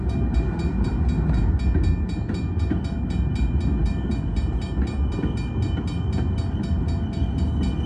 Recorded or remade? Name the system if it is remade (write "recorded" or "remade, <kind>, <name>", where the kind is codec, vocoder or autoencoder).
recorded